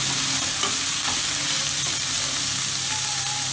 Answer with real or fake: real